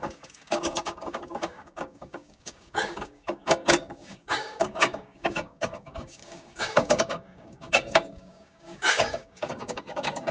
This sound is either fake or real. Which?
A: fake